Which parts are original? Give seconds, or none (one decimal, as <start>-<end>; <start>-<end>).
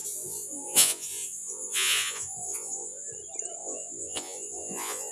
3.1-3.6